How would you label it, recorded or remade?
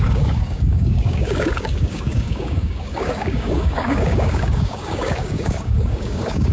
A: remade